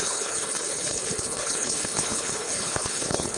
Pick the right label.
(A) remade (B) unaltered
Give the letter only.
A